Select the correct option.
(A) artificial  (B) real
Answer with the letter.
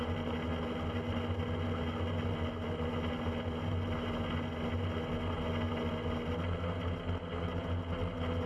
B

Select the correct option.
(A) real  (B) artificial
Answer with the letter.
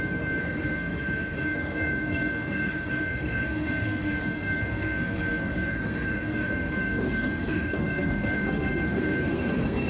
B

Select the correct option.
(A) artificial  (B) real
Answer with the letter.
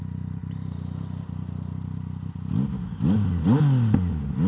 B